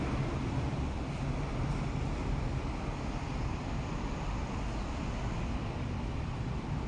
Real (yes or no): yes